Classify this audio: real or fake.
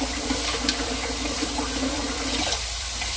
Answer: fake